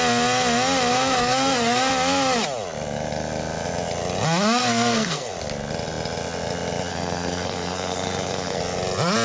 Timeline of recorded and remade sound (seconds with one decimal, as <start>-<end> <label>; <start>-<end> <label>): 0.0-0.9 recorded; 0.9-1.9 remade; 1.9-4.6 recorded; 4.6-5.3 remade; 5.3-6.9 recorded; 6.9-8.6 remade; 8.6-9.2 recorded